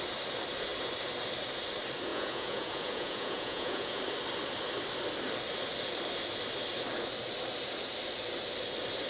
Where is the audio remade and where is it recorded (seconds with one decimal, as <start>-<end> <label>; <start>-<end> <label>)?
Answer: 0.0-2.1 recorded; 2.1-4.0 remade; 4.0-9.1 recorded